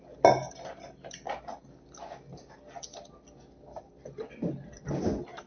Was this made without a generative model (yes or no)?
yes